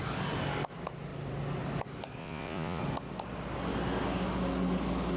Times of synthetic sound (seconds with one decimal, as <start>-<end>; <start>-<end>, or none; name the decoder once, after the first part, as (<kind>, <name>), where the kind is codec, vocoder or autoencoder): 2.2-2.8 (vocoder, Vocos)